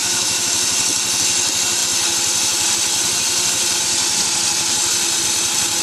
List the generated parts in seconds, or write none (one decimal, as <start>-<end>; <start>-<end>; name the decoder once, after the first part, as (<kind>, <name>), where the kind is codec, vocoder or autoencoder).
0.0-0.5 (autoencoder, DAC-VAE)